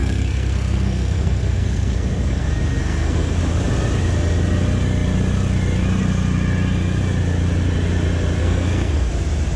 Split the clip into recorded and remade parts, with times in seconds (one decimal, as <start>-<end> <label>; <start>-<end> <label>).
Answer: 0.0-3.4 remade; 3.4-8.4 recorded; 8.4-9.1 remade; 9.1-9.6 recorded